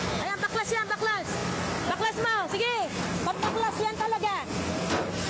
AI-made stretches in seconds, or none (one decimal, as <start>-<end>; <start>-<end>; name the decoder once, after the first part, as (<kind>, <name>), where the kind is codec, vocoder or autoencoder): none